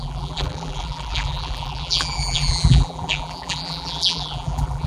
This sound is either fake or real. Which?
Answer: fake